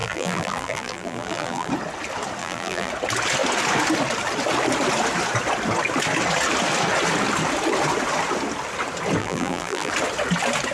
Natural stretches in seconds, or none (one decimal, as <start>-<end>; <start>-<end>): 1.7-2.4; 2.9-9.2; 9.9-10.7